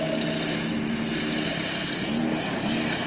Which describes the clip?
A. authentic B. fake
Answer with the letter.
A